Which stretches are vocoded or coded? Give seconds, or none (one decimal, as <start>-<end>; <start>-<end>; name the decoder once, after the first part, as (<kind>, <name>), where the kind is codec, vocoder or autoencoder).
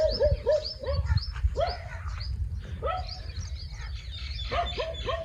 0.6-3.2 (vocoder, BigVGAN v2)